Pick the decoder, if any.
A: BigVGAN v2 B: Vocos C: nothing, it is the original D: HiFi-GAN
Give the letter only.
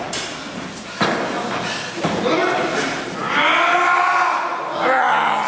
C